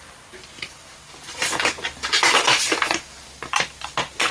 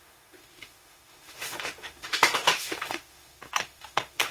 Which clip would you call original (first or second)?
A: first